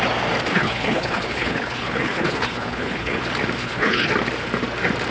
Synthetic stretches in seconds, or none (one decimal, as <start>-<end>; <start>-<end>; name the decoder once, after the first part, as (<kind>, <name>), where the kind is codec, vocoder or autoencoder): 0.5-3.2 (codec, HILCodec); 3.6-4.1